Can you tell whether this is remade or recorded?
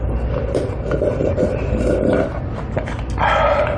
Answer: recorded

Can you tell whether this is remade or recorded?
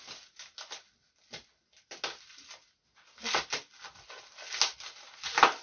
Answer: recorded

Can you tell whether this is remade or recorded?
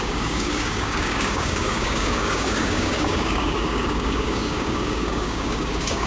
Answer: remade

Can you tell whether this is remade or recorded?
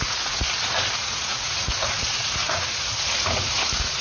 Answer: remade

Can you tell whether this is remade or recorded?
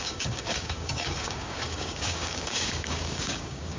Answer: remade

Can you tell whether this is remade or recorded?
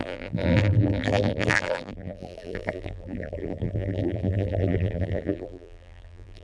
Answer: remade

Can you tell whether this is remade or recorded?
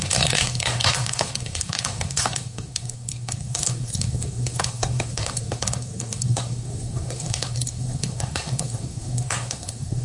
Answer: remade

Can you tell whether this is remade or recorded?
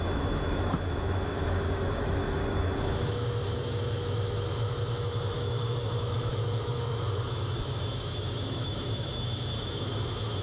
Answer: remade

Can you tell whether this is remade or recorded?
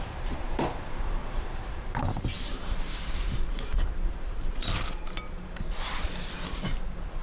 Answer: remade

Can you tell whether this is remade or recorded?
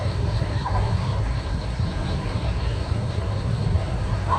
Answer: remade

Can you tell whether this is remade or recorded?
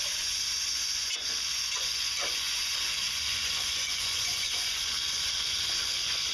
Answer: remade